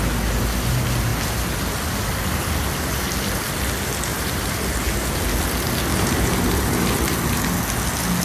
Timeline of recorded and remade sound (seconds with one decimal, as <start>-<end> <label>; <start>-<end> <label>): 0.0-4.1 recorded; 4.1-5.1 remade; 5.1-5.9 recorded; 5.9-6.9 remade; 6.9-8.2 recorded